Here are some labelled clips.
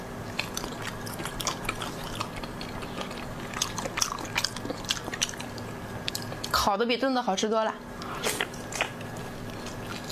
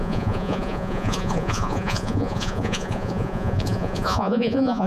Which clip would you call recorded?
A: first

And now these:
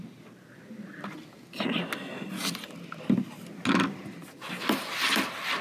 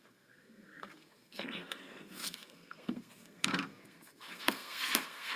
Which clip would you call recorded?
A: first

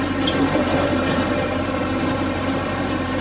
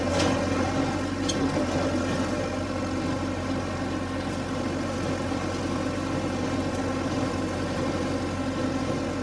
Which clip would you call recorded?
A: second